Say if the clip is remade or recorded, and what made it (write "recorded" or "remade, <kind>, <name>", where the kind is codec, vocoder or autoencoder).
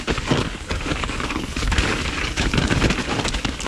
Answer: remade, codec, DAC